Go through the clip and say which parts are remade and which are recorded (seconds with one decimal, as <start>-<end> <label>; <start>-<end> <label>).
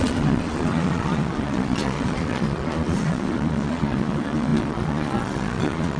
0.0-6.0 remade